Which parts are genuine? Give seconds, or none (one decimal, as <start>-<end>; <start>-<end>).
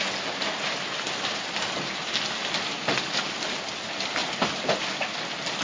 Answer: 0.0-5.6